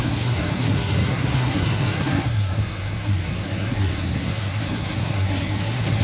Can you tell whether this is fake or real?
fake